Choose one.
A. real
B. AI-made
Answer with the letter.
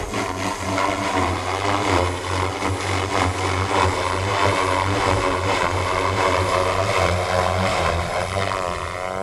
A